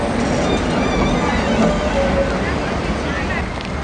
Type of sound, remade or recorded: recorded